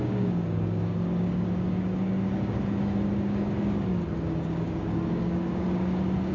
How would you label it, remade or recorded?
remade